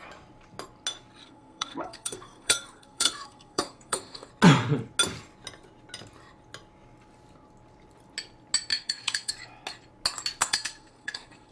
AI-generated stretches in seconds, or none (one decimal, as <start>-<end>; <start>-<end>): 1.2-4.3; 8.7-9.3; 10.4-11.5